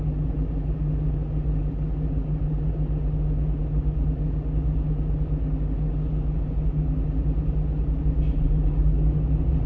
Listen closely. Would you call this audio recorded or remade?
recorded